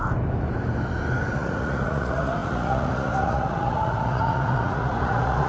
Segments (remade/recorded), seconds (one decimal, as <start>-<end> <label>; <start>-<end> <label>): 0.0-1.3 recorded; 1.3-5.5 remade